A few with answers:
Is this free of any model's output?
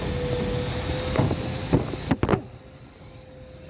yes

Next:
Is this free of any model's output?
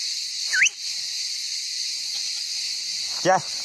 yes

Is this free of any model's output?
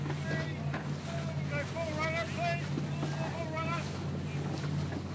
yes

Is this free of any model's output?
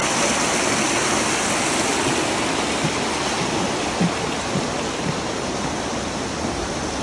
yes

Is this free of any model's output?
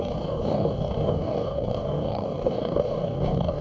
no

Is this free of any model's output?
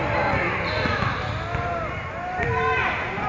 yes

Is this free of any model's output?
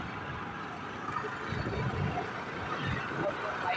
yes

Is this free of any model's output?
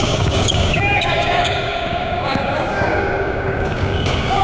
no